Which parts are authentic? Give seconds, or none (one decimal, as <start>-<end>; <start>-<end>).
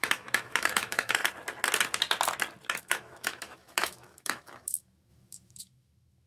1.2-2.8